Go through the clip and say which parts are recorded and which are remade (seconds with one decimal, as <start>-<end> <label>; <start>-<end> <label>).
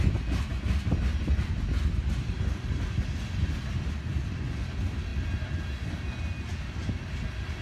0.0-7.6 recorded